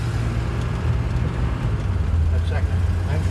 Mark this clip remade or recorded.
recorded